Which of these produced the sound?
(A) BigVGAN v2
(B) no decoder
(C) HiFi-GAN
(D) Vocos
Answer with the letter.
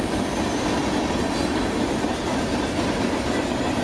B